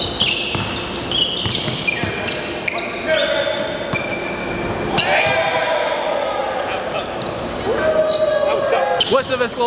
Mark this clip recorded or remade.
recorded